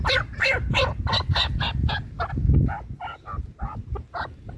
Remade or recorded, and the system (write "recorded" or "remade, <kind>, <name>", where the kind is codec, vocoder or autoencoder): recorded